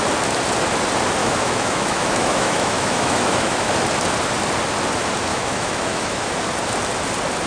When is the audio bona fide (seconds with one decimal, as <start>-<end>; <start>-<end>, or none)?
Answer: 0.0-1.2; 3.7-5.3; 6.3-7.5